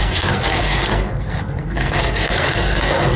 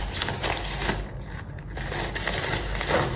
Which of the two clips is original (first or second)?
second